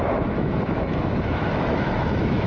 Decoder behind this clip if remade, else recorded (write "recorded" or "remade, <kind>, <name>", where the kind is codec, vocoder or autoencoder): remade, autoencoder, DAC-VAE